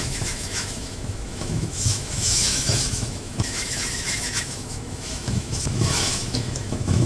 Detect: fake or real fake